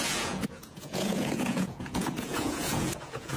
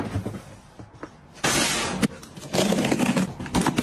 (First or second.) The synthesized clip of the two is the first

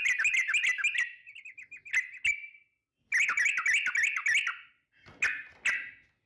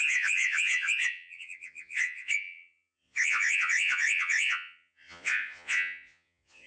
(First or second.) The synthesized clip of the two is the second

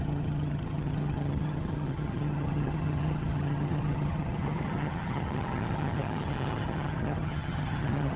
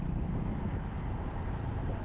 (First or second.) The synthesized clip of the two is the first